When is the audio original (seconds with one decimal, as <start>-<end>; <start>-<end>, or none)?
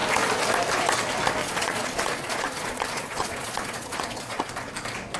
0.0-1.4; 4.5-5.2